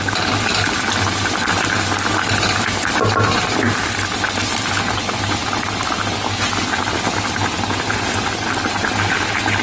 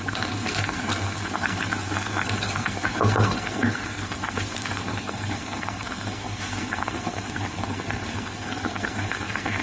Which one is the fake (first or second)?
second